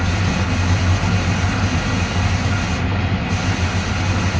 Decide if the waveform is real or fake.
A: real